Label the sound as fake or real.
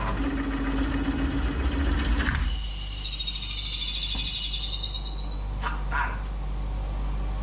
real